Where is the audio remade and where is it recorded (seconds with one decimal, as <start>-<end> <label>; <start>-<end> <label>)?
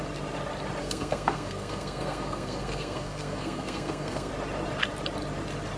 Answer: 0.0-0.8 recorded; 0.8-4.3 remade; 4.3-5.8 recorded